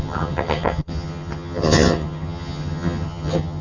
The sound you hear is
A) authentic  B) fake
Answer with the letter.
B